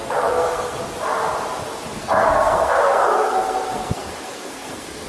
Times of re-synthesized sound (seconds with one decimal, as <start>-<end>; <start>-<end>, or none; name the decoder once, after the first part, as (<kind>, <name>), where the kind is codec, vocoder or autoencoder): 0.0-0.8 (codec, SNAC); 2.0-5.1